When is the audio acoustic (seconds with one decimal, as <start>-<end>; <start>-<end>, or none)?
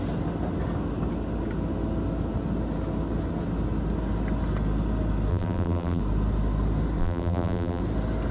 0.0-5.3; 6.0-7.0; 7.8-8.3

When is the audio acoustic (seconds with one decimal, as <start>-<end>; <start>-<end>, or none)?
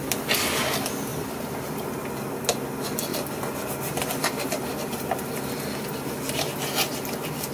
0.0-1.1; 1.8-7.5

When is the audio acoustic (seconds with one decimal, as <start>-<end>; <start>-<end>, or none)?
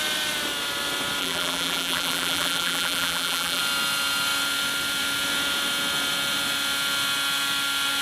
0.0-1.2; 3.6-8.0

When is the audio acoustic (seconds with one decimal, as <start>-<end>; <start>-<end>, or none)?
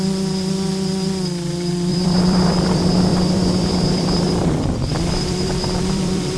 0.0-1.9; 2.7-3.1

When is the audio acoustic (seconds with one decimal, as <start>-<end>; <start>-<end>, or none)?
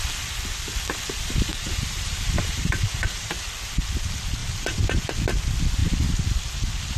0.0-1.5; 3.3-4.4; 5.1-7.0